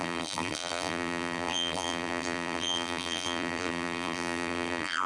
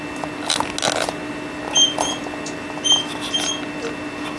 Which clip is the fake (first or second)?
first